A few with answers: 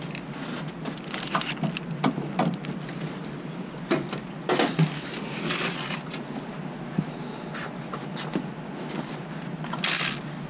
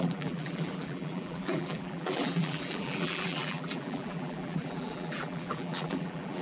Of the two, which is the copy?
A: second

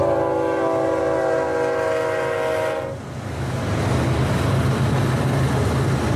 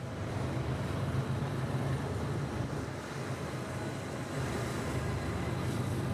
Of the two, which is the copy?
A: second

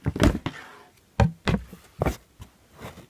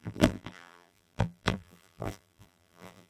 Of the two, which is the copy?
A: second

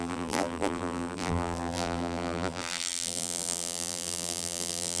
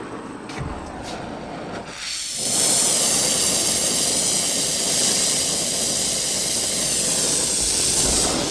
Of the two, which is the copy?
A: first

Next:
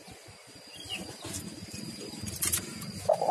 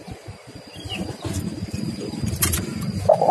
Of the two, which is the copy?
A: second